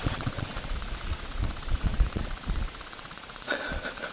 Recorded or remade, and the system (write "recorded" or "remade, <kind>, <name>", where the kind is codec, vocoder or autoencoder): remade, vocoder, Vocos